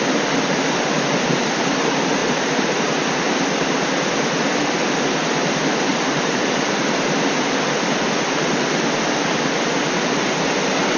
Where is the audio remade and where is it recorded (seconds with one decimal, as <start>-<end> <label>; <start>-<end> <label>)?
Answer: 0.0-2.2 recorded; 2.2-2.9 remade; 2.9-5.9 recorded; 5.9-7.4 remade; 7.4-11.0 recorded